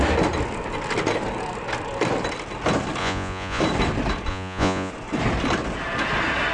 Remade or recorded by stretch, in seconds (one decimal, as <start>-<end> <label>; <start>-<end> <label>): 0.0-3.0 recorded; 3.0-3.6 remade; 3.6-4.3 recorded; 4.3-4.9 remade; 4.9-6.5 recorded